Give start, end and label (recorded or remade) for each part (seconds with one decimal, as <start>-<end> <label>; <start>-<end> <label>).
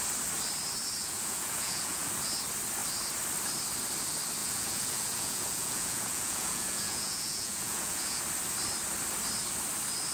0.0-1.0 recorded; 1.0-2.1 remade; 2.1-4.4 recorded; 4.4-8.2 remade; 8.2-10.1 recorded